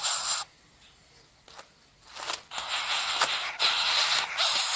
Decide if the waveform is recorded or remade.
recorded